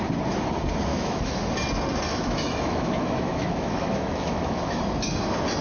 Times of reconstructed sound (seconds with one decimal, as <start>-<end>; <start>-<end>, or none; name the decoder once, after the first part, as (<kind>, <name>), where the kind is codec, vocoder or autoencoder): 0.9-1.5 (autoencoder, DAC-VAE); 2.1-4.8